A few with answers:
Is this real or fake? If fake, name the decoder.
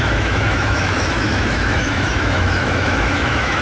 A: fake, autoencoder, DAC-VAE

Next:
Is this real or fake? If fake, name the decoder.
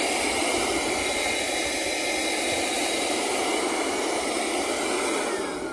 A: real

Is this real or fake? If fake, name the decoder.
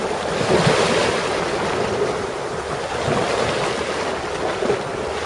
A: real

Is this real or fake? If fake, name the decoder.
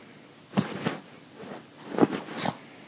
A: real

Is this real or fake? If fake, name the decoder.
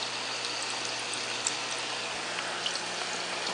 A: real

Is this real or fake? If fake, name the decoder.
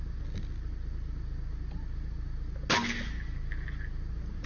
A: real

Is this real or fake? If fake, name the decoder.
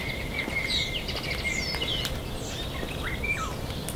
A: real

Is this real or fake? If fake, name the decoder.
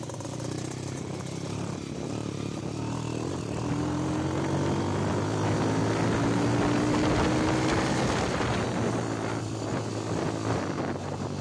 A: real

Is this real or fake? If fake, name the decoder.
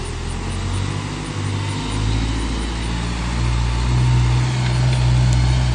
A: real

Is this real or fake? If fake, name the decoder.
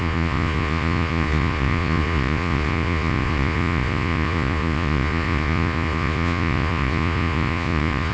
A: fake, vocoder, Vocos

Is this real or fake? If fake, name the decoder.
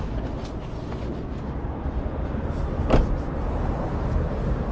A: real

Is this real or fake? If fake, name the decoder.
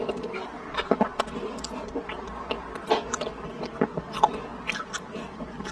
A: real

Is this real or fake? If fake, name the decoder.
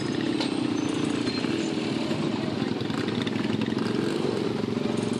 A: real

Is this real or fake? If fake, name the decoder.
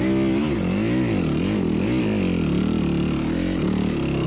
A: real